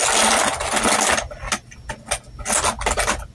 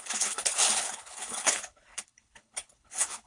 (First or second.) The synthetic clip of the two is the second